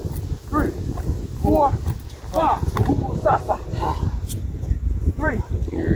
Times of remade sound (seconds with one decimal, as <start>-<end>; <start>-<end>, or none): 3.0-5.3